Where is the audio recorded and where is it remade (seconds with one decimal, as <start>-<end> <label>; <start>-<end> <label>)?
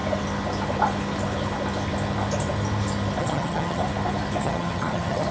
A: 0.0-3.2 recorded; 3.2-3.8 remade; 3.8-4.4 recorded; 4.4-5.3 remade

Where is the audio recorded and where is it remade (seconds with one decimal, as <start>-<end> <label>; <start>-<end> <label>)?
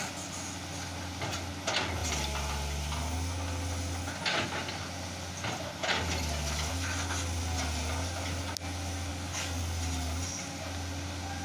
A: 0.0-9.1 recorded; 9.1-9.6 remade; 9.6-11.4 recorded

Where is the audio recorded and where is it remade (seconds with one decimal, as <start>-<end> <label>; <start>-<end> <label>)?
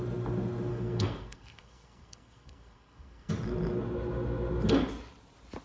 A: 0.0-0.7 recorded; 0.7-3.3 remade; 3.3-5.6 recorded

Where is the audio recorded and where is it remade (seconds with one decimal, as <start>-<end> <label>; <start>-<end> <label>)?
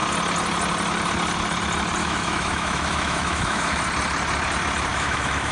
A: 0.0-2.0 recorded; 2.0-3.8 remade; 3.8-4.9 recorded; 4.9-5.5 remade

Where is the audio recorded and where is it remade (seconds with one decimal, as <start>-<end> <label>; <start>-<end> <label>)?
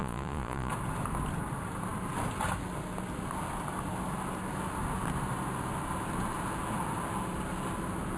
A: 0.0-0.7 remade; 0.7-8.2 recorded